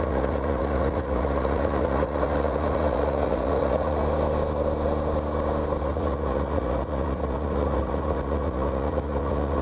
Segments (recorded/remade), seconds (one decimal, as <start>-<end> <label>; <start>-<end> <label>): 0.0-4.0 remade; 4.0-5.8 recorded; 5.8-9.6 remade

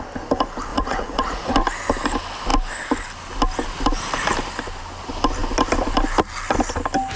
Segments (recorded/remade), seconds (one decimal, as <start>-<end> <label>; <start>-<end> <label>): 0.0-0.7 recorded; 0.7-1.5 remade; 1.5-7.2 recorded

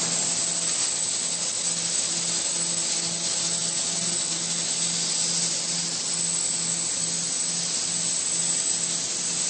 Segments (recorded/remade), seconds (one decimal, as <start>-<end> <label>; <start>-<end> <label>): 0.0-9.5 recorded

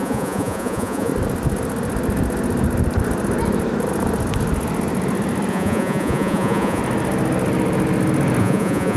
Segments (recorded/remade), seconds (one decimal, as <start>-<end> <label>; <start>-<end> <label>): 0.0-1.1 remade; 1.1-5.5 recorded; 5.5-6.8 remade; 6.8-8.4 recorded; 8.4-9.0 remade

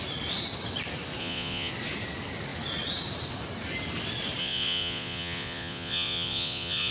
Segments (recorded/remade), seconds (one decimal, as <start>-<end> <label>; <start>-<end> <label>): 0.0-1.2 recorded; 1.2-1.7 remade; 1.7-4.4 recorded; 4.4-6.9 remade